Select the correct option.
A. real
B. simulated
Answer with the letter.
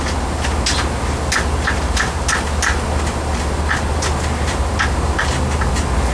A